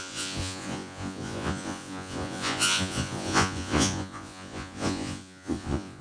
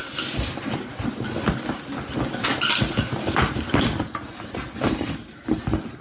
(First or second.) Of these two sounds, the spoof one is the first